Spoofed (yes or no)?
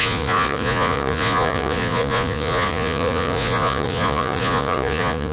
yes